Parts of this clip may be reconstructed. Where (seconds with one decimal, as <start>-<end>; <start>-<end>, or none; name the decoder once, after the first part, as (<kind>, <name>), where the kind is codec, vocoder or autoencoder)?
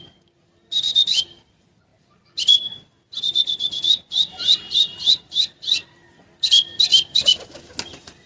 none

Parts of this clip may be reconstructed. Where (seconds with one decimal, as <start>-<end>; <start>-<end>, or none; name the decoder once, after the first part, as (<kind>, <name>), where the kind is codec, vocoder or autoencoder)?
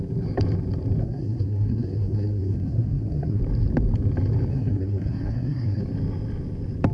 1.0-3.4 (codec, SNAC); 4.5-5.8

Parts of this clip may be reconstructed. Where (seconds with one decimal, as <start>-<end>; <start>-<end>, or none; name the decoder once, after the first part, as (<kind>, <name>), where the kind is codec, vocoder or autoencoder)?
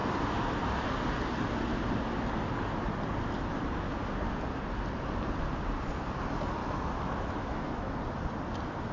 6.6-8.0 (autoencoder, DAC-VAE)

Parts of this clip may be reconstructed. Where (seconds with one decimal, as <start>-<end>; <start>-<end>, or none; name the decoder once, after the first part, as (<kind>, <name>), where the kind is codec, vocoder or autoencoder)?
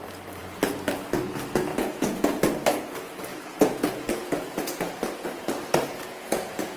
1.7-2.4 (vocoder, Vocos); 3.3-4.9; 5.7-6.8